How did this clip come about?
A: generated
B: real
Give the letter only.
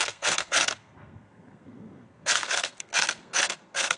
A